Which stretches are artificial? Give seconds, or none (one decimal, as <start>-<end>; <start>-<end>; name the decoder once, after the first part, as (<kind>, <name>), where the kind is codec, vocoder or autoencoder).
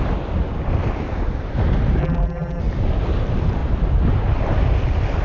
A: 2.0-2.6 (vocoder, BigVGAN v2)